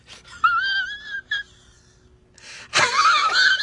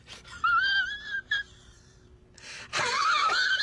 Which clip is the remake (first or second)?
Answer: second